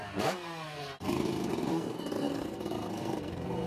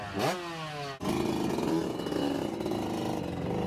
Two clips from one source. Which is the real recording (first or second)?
second